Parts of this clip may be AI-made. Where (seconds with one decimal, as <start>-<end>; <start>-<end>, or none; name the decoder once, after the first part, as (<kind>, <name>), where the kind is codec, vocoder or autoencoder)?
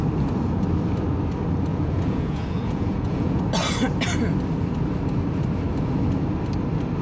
1.7-3.4 (vocoder, Vocos)